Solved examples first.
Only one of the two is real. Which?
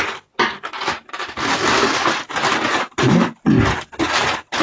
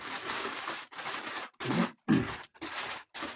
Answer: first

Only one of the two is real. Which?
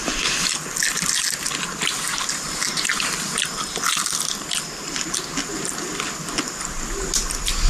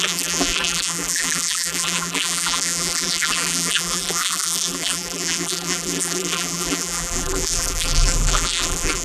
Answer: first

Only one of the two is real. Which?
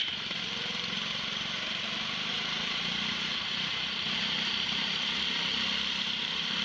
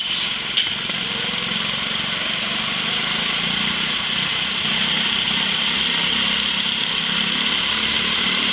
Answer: second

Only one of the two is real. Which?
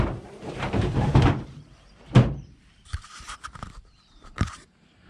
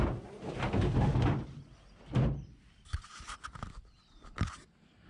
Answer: second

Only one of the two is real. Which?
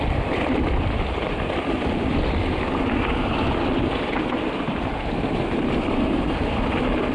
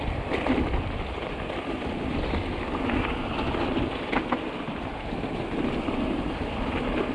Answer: second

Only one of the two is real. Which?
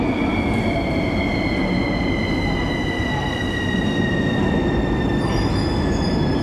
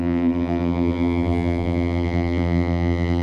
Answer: first